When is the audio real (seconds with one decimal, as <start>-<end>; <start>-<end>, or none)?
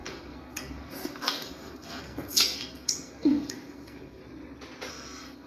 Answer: 4.2-4.9